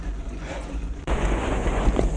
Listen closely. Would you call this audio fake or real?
fake